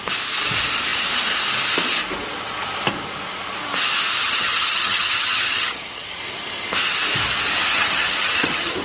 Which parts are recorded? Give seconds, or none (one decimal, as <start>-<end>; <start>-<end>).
0.0-4.2; 6.2-7.7